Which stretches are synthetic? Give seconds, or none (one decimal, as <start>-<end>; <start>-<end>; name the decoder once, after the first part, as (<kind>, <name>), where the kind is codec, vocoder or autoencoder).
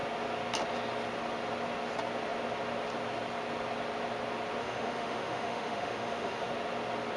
4.6-6.5 (autoencoder, DAC-VAE)